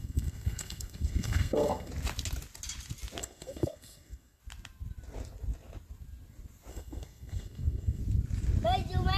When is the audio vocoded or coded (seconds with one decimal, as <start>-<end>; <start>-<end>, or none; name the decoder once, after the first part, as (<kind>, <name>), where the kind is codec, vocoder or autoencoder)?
0.0-1.9 (codec, SNAC); 3.2-4.4; 6.7-8.0